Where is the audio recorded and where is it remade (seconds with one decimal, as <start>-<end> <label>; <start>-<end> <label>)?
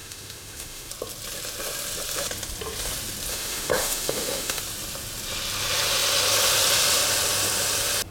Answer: 0.0-0.9 remade; 0.9-3.3 recorded; 3.3-4.6 remade; 4.6-8.1 recorded